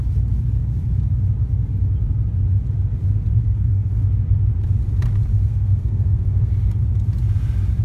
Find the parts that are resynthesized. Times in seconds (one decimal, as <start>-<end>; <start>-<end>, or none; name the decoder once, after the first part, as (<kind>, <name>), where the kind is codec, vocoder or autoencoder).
3.4-4.1 (codec, SNAC); 5.3-6.5